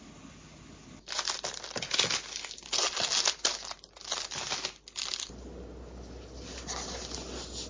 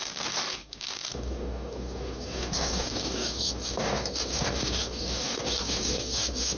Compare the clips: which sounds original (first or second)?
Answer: first